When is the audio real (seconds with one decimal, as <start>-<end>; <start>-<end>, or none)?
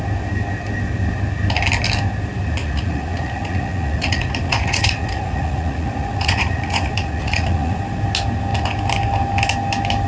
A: 0.0-2.6; 7.8-10.1